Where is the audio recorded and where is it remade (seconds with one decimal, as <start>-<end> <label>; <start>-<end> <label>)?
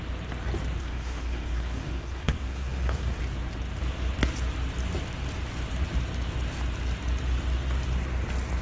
0.0-0.8 recorded; 0.8-3.2 remade; 3.2-8.6 recorded